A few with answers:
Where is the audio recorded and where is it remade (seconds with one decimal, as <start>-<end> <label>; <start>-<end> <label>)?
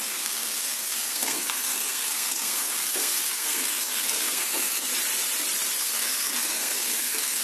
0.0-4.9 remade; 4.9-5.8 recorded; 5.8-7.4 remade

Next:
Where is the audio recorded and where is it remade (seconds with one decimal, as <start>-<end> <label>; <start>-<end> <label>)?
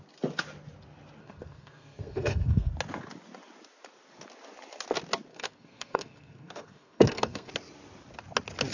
0.0-1.2 recorded; 1.2-2.7 remade; 2.7-5.3 recorded; 5.3-7.5 remade; 7.5-8.7 recorded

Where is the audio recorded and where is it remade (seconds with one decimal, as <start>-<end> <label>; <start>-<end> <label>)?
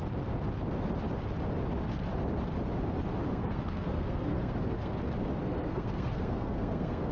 0.0-3.3 recorded; 3.3-4.9 remade; 4.9-5.4 recorded; 5.4-7.1 remade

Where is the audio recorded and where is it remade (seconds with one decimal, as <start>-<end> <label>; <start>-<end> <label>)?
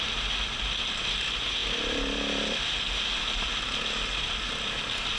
0.0-5.2 recorded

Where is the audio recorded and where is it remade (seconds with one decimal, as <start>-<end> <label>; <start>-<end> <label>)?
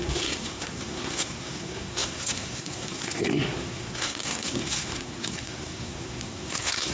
0.0-6.9 remade